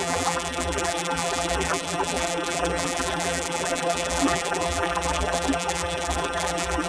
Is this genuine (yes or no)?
no